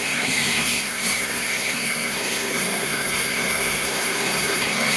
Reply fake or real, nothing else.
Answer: fake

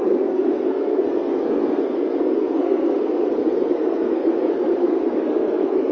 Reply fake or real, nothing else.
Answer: fake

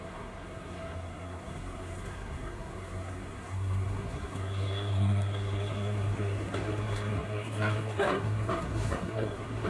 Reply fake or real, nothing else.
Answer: fake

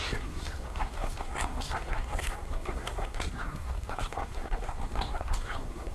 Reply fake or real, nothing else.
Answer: fake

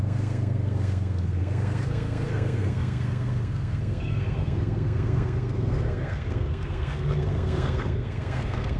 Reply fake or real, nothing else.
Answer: fake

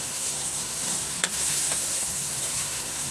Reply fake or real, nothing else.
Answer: fake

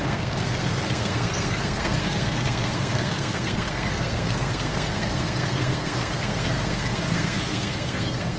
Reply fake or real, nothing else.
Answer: fake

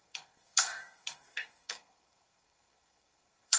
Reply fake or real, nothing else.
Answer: fake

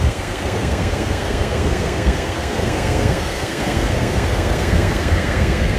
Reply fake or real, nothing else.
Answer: fake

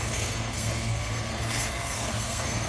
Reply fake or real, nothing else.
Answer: fake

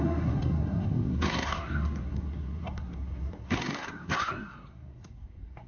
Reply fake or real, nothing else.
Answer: fake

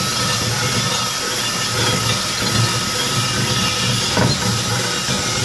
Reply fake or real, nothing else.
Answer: real